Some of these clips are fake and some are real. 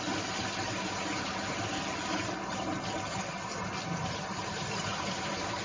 real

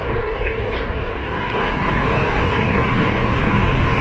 fake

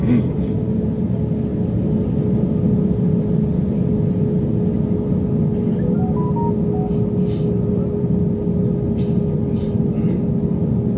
real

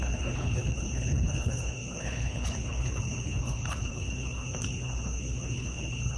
fake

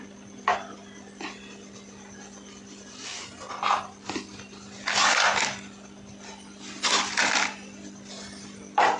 real